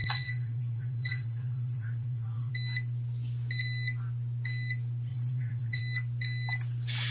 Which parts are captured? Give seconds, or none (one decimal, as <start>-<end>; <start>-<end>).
2.5-5.1; 5.8-7.1